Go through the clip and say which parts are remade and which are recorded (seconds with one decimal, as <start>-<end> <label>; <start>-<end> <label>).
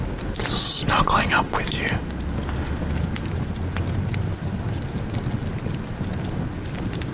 0.0-7.1 recorded